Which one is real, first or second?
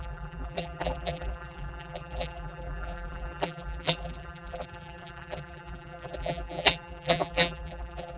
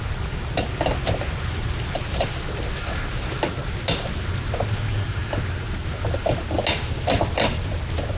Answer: second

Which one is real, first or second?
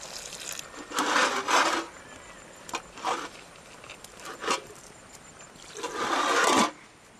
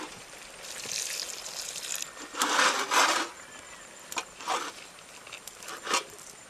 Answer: first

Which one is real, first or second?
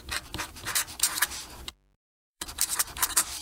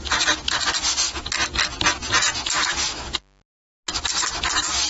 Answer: second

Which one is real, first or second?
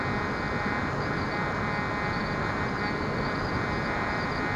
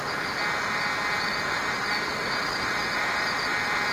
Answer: first